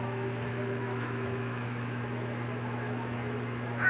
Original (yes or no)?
no